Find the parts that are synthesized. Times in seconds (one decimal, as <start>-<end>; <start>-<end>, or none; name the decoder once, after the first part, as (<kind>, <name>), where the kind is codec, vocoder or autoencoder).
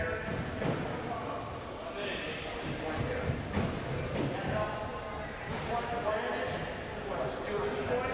none